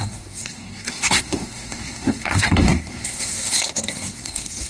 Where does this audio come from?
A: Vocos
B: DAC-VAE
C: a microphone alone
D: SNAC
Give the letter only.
D